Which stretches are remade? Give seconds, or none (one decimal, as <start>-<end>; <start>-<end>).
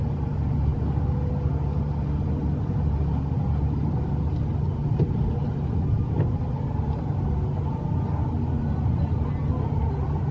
none